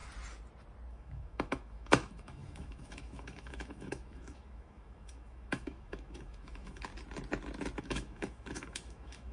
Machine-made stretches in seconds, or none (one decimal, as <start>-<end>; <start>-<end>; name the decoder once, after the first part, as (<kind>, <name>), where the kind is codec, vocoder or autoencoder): 0.9-6.9 (autoencoder, DAC-VAE); 7.8-9.3